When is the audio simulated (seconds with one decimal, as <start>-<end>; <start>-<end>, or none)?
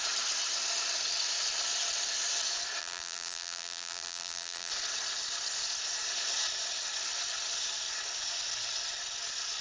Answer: 2.8-4.7